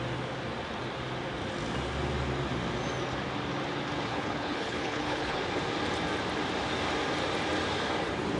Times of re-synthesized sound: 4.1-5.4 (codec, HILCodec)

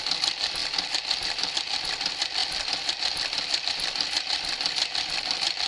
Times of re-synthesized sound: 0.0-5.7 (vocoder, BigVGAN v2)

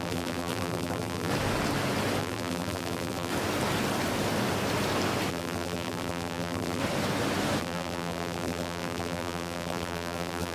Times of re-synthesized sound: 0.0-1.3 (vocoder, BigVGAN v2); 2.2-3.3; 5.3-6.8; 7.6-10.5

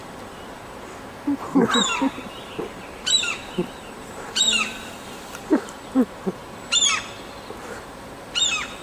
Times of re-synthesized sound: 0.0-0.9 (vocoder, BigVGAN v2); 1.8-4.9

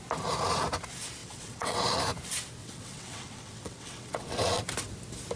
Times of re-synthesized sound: 1.2-2.0 (vocoder, WaveNeXt); 2.6-4.6

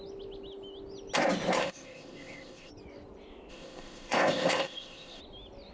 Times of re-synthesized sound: 1.6-2.7 (codec, ZipCodec); 3.5-5.2

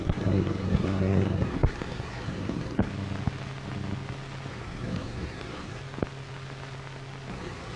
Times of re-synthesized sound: 0.0-2.9 (codec, SNAC); 4.5-5.8; 7.3-7.8